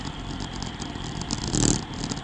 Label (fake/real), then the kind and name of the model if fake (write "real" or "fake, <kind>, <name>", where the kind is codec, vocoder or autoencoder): fake, vocoder, BigVGAN v2